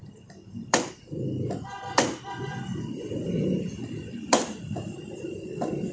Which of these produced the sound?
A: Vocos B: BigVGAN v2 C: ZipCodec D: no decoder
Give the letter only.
B